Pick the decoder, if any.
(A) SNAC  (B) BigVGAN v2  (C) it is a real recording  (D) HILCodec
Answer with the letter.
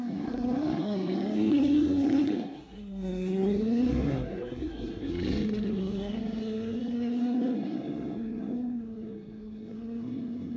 A